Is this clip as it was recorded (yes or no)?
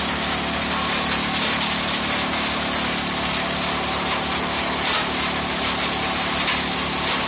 yes